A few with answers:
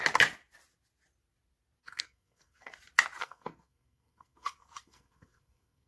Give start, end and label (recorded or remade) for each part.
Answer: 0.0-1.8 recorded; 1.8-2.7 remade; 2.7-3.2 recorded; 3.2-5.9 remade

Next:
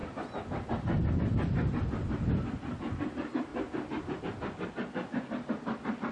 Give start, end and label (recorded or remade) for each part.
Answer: 0.0-1.1 recorded; 1.1-3.5 remade; 3.5-4.2 recorded; 4.2-6.1 remade

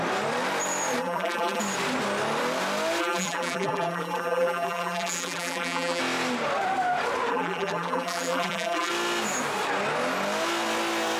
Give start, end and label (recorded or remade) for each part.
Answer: 0.0-1.0 recorded; 1.0-1.6 remade; 1.6-3.0 recorded; 3.0-6.0 remade; 6.0-7.3 recorded; 7.3-8.9 remade; 8.9-11.2 recorded